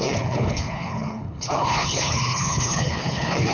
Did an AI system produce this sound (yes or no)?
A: yes